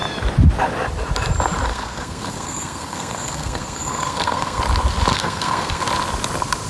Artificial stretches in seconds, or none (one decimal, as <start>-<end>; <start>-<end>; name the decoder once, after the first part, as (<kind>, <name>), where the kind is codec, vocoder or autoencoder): 1.7-4.6 (codec, SNAC); 5.1-5.8